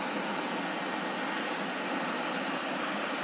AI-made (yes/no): no